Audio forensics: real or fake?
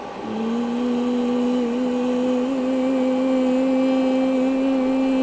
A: real